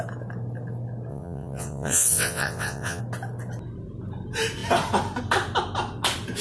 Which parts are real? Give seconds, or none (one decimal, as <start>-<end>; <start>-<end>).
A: 0.0-1.1; 3.0-6.4